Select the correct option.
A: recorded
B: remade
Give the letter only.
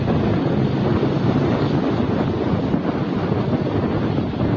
A